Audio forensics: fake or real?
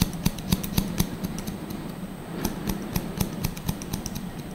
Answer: real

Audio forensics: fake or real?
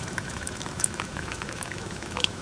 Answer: fake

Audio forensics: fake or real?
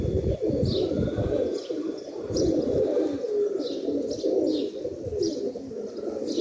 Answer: real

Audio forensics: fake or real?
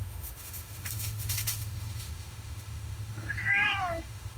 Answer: fake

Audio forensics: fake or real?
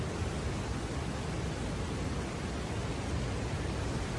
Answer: real